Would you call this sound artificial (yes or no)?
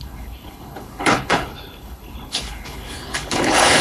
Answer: yes